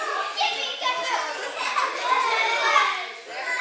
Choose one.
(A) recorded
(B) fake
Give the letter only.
A